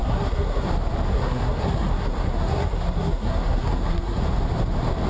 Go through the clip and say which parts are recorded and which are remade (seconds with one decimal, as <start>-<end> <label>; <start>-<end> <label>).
0.0-0.7 remade; 0.7-1.1 recorded; 1.1-4.2 remade; 4.2-5.1 recorded